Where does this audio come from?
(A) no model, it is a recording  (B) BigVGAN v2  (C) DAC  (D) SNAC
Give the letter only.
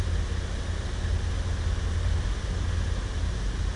A